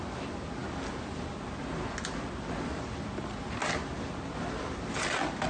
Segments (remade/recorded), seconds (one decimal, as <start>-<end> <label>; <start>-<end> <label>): 0.0-5.5 recorded

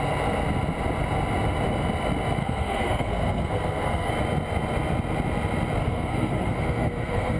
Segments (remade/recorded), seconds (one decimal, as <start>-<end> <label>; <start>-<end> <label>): 0.0-2.4 recorded; 2.4-4.1 remade; 4.1-5.8 recorded; 5.8-7.4 remade

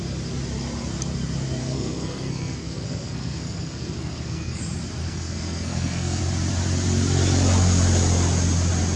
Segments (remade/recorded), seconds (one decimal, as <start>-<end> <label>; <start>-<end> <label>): 0.0-1.6 recorded; 1.6-4.6 remade; 4.6-5.0 recorded; 5.0-6.2 remade; 6.2-9.0 recorded

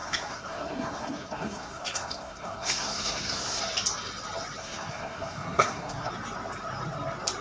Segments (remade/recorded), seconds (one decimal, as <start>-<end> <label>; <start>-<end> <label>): 0.0-3.6 remade; 3.6-4.6 recorded; 4.6-6.1 remade; 6.1-7.4 recorded

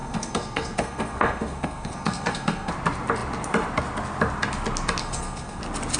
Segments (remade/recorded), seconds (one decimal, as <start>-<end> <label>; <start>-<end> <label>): 0.0-2.7 remade; 2.7-5.0 recorded; 5.0-5.6 remade; 5.6-6.0 recorded

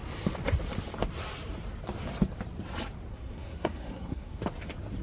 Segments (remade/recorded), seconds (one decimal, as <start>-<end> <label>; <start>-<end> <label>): 0.0-3.1 recorded; 3.1-4.4 remade; 4.4-5.0 recorded